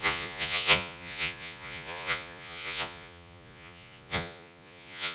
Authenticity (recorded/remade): remade